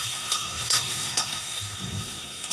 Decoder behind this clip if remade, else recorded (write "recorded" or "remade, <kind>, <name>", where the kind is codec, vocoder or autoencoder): remade, codec, SNAC